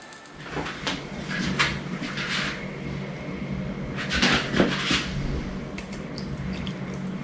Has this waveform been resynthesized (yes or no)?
no